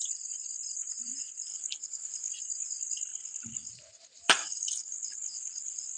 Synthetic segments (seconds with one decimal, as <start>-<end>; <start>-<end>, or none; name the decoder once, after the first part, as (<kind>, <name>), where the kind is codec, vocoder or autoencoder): 1.5-2.3 (codec, HILCodec); 3.1-3.7; 4.4-6.0